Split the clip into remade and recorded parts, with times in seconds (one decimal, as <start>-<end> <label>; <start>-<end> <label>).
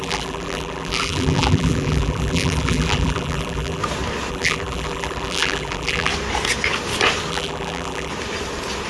0.0-3.8 remade; 3.8-4.3 recorded; 4.3-6.1 remade; 6.1-7.3 recorded; 7.3-8.1 remade; 8.1-8.9 recorded